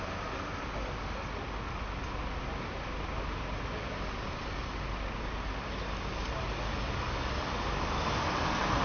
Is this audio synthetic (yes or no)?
no